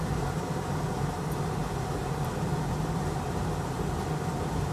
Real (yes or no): no